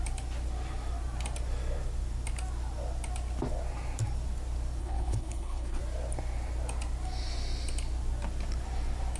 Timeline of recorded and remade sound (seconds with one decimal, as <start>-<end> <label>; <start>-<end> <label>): 0.0-4.8 recorded; 4.8-5.8 remade; 5.8-9.2 recorded